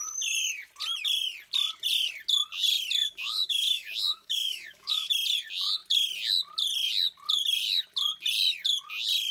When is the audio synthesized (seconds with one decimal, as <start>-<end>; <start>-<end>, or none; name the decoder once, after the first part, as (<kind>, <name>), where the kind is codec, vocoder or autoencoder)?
3.0-5.1 (autoencoder, DAC-VAE)